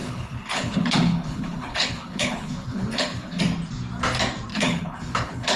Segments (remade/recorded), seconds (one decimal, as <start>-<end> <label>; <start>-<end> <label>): 0.0-3.4 remade; 3.4-4.5 recorded; 4.5-5.6 remade